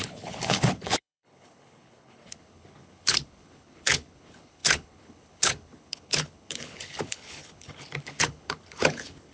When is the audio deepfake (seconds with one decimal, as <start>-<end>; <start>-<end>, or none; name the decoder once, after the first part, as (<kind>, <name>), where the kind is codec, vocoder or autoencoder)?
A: 0.0-9.3 (codec, HILCodec)